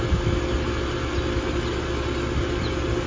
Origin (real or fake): real